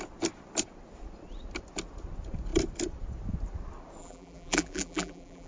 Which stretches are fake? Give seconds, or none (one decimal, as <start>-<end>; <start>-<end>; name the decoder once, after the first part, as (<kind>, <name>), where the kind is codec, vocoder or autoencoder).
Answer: 4.0-5.5 (vocoder, BigVGAN v2)